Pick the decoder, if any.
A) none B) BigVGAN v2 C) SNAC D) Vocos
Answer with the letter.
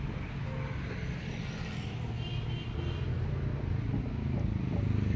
A